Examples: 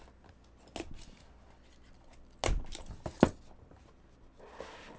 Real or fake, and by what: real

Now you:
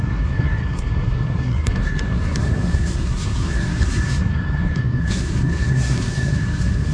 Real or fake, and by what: fake, codec, SNAC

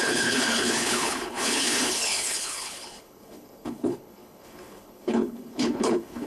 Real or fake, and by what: fake, codec, HILCodec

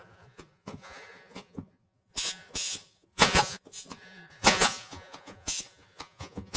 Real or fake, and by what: fake, vocoder, Vocos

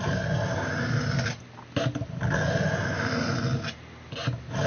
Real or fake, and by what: real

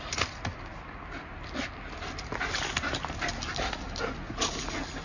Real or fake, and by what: real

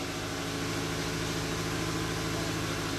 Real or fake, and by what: real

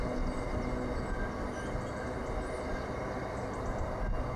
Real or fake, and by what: real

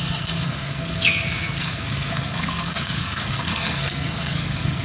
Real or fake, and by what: fake, codec, SNAC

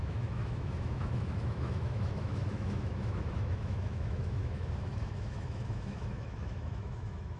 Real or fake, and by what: fake, autoencoder, DAC-VAE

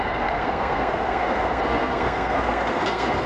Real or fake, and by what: fake, codec, SNAC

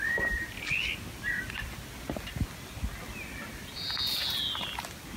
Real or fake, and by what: real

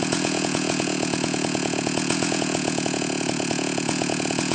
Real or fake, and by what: fake, vocoder, Vocos